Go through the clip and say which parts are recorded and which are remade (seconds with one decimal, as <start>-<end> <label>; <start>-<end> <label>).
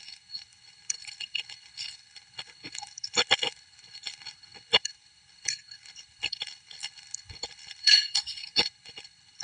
0.0-9.4 remade